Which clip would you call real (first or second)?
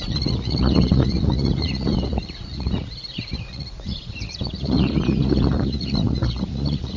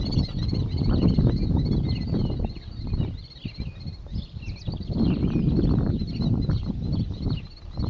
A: second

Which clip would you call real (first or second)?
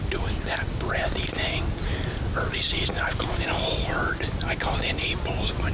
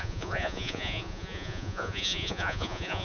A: first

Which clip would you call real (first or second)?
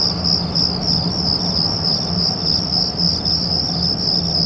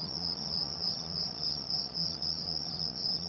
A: first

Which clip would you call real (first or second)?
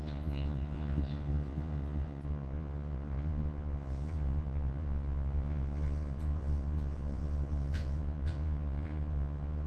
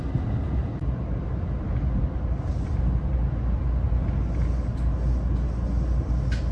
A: second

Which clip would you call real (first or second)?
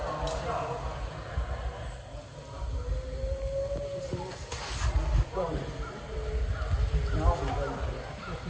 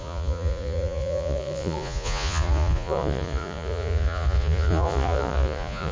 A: first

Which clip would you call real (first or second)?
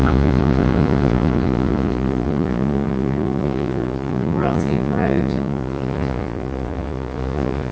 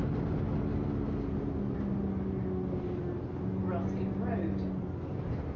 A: second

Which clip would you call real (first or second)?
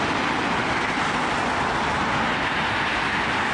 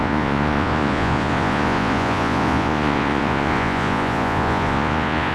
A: first